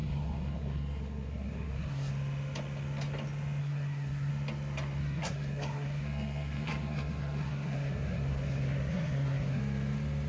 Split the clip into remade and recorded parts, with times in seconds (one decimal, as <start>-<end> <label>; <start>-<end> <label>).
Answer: 0.0-2.1 remade; 2.1-3.6 recorded; 3.6-4.3 remade; 4.3-5.0 recorded; 5.0-9.6 remade; 9.6-10.3 recorded